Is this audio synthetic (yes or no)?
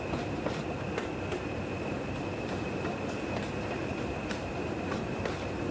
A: no